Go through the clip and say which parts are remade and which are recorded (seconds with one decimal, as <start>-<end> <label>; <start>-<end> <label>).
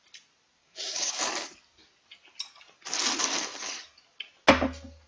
0.0-0.6 recorded; 0.6-1.2 remade; 1.2-5.1 recorded